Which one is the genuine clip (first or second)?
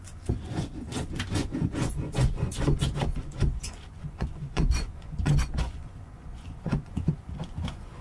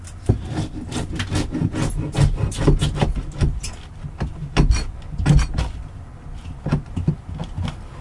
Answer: second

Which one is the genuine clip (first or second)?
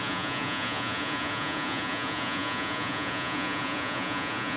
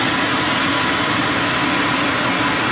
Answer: second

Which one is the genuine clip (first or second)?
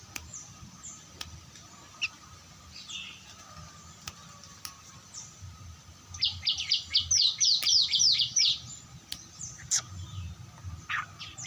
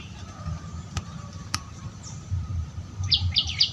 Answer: first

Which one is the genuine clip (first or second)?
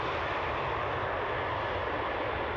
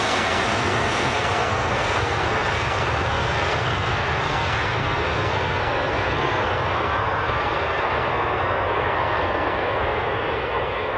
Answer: first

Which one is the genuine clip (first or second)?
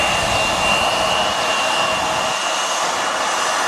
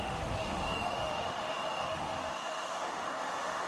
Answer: first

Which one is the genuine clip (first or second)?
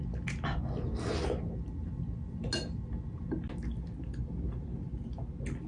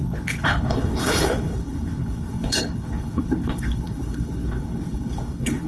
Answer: first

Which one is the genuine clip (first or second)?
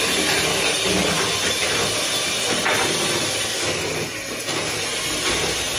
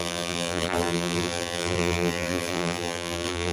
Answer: first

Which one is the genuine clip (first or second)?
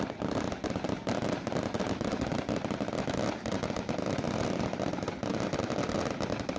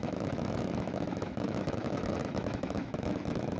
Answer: first